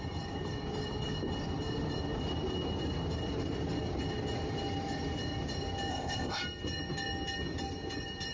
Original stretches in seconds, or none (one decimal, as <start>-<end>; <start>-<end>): 0.0-5.9; 6.4-8.3